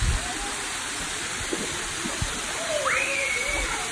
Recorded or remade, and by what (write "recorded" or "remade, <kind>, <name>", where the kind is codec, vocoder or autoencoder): recorded